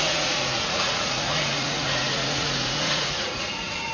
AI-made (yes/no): yes